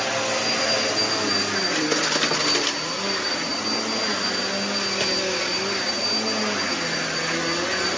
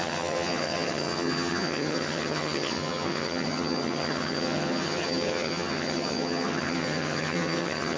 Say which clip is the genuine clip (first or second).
first